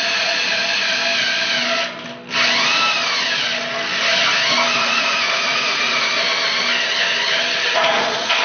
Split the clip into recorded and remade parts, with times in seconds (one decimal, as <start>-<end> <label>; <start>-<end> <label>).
0.0-0.5 remade; 0.5-4.8 recorded; 4.8-6.1 remade; 6.1-7.7 recorded; 7.7-8.4 remade

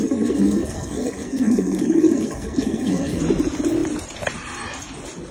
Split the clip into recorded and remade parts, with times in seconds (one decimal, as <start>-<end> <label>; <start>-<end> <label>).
0.0-3.2 remade; 3.2-5.3 recorded

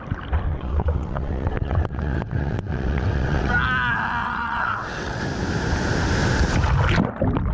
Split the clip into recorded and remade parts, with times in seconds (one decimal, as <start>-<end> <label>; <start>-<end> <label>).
0.0-0.5 recorded; 0.5-3.5 remade; 3.5-4.2 recorded; 4.2-5.2 remade; 5.2-7.5 recorded

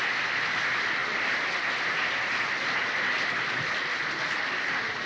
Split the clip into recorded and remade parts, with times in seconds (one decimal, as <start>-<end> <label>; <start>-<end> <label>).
0.0-5.1 recorded

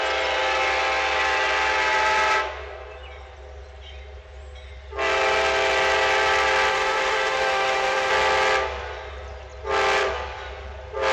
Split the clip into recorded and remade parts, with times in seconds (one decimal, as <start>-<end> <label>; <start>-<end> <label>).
0.0-6.7 recorded; 6.7-8.1 remade; 8.1-11.1 recorded

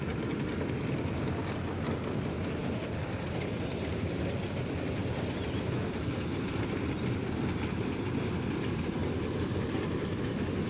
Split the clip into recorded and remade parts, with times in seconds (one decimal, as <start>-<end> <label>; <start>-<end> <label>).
0.0-10.7 recorded

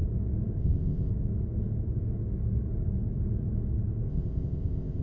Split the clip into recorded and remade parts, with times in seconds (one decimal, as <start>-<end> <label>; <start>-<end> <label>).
0.0-0.6 recorded; 0.6-1.1 remade; 1.1-4.1 recorded; 4.1-5.0 remade